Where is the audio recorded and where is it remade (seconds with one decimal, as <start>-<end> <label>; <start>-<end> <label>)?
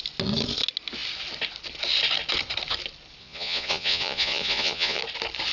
0.0-3.2 recorded; 3.2-5.0 remade; 5.0-5.5 recorded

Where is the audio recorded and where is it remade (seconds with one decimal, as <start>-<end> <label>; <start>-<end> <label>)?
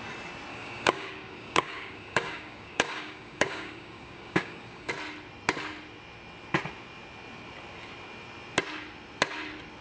0.0-0.5 recorded; 0.5-4.9 remade; 4.9-9.8 recorded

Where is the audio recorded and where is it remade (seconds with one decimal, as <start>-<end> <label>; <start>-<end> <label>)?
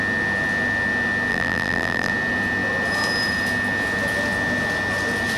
0.0-1.3 recorded; 1.3-2.1 remade; 2.1-5.4 recorded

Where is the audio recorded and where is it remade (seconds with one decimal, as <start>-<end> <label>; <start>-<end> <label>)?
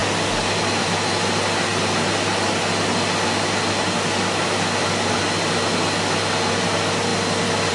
0.0-0.6 remade; 0.6-7.7 recorded